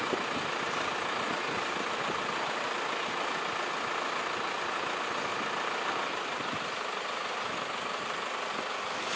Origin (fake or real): real